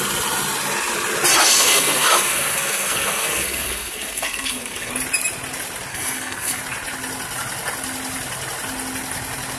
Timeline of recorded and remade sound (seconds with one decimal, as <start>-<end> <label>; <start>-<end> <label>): 0.0-1.4 recorded; 1.4-4.9 remade; 4.9-5.9 recorded; 5.9-6.6 remade; 6.6-9.6 recorded